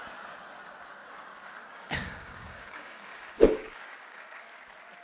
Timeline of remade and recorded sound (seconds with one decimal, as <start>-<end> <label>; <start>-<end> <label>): 0.0-1.6 recorded; 1.6-4.6 remade; 4.6-5.0 recorded